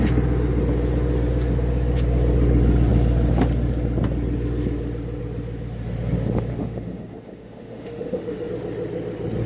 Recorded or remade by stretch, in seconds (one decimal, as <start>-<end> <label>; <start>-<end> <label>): 0.0-6.5 recorded; 6.5-8.5 remade; 8.5-9.5 recorded